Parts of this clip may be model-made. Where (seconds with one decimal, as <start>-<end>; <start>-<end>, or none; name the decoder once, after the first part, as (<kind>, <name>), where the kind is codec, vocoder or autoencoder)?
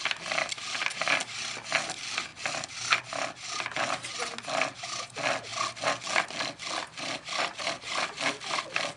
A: 6.9-8.6 (vocoder, BigVGAN v2)